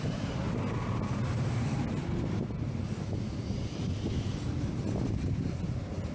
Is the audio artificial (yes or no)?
no